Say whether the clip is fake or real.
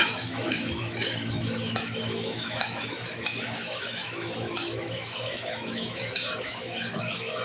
fake